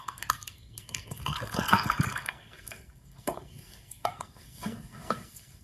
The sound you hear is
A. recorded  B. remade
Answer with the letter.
B